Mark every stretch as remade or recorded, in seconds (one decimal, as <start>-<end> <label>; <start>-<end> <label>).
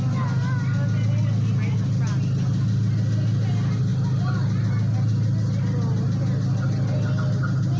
0.0-7.8 recorded